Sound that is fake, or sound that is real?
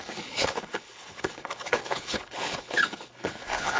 fake